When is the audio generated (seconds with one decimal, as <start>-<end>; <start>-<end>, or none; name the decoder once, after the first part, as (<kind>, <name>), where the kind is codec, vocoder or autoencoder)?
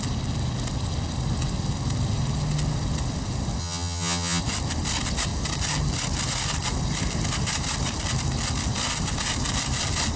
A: 3.6-4.4 (vocoder, HiFi-GAN)